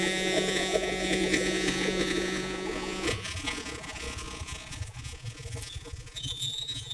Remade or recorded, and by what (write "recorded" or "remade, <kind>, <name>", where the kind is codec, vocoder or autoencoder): remade, vocoder, Vocos